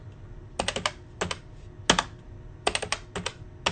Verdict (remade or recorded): recorded